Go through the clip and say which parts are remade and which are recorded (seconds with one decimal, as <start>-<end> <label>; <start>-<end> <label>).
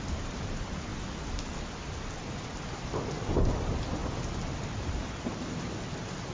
0.0-6.3 recorded